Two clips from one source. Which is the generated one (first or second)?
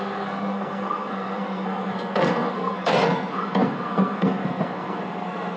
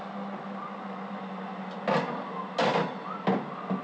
first